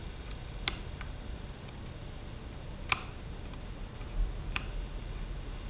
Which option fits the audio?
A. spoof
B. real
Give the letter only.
B